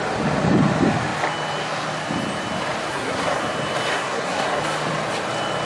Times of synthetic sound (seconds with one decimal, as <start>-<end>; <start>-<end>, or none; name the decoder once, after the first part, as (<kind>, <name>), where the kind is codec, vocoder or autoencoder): 2.9-3.4 (codec, SNAC); 3.9-4.6